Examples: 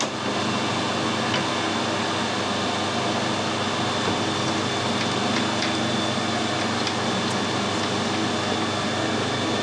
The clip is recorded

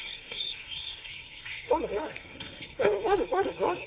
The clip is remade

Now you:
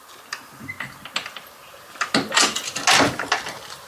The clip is recorded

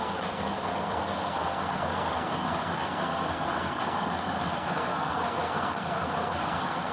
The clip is remade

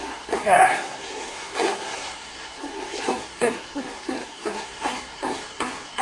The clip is remade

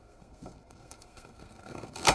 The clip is remade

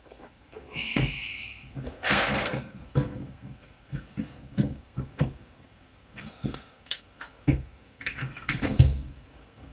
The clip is remade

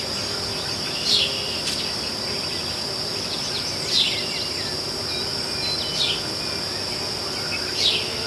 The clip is recorded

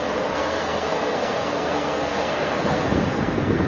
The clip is remade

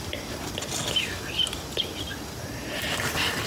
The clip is recorded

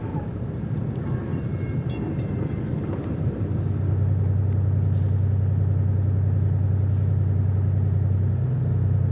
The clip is recorded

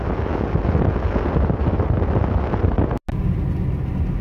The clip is recorded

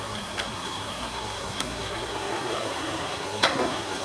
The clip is remade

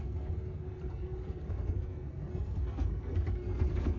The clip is remade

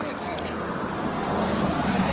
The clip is recorded